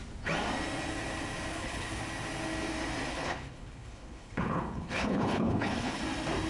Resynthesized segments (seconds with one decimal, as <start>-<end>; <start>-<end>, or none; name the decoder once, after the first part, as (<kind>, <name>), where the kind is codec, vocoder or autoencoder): 1.5-2.0 (codec, HILCodec); 3.1-6.0